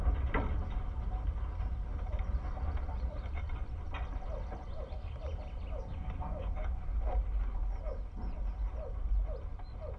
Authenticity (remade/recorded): recorded